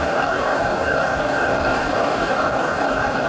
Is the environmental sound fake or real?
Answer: fake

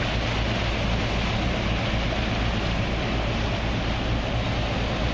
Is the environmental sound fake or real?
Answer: real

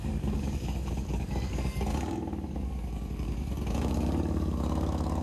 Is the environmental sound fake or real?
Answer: fake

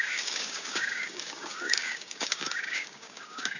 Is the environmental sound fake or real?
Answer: fake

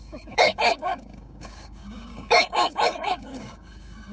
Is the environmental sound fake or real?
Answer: fake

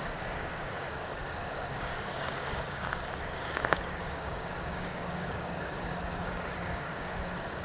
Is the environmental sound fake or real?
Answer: fake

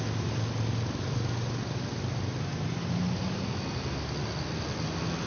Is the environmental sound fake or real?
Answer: real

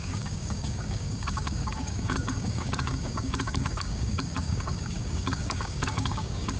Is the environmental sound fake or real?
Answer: fake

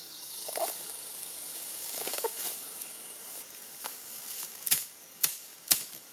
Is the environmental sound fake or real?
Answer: fake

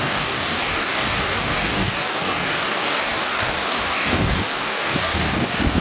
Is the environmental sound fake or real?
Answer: fake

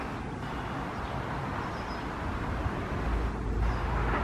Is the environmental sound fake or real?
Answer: real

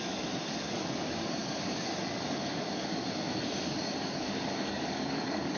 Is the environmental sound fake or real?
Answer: fake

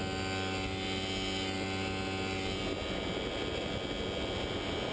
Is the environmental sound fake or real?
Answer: real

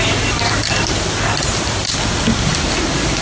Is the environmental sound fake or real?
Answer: real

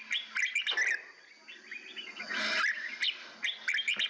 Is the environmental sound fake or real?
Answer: real